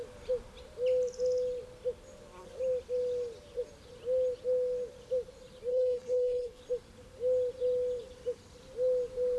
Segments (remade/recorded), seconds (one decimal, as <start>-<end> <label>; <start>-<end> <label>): 0.0-5.7 recorded; 5.7-6.6 remade; 6.6-9.4 recorded